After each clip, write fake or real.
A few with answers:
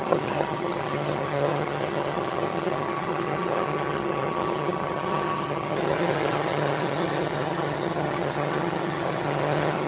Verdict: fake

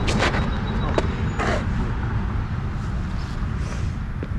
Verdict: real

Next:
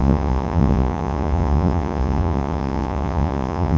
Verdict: fake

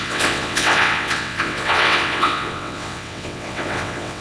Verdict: fake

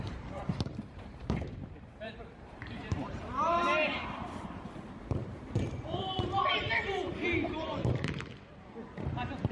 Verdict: fake